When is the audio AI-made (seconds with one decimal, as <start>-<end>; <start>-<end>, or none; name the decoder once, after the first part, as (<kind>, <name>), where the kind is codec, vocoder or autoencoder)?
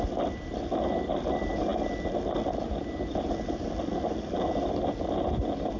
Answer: none